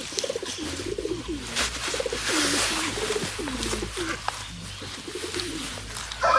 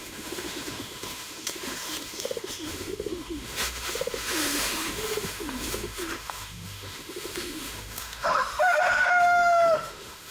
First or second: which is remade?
second